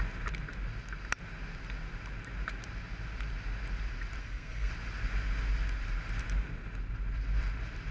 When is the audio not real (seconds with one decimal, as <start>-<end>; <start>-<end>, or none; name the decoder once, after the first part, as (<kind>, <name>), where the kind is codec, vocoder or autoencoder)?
4.2-4.7 (codec, SNAC)